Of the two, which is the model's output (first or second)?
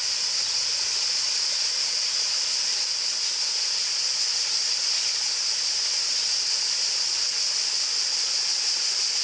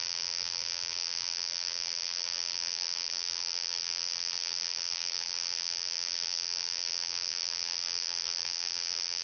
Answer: second